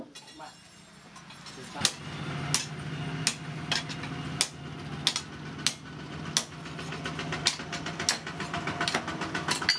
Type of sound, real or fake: real